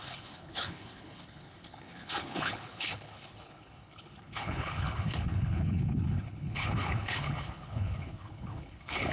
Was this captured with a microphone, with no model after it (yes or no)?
no